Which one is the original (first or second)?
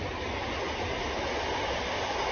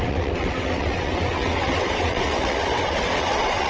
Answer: first